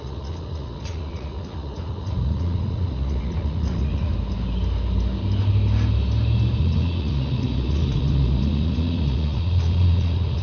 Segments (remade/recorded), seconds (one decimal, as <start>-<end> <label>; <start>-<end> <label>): 0.0-4.1 remade; 4.1-6.6 recorded; 6.6-10.4 remade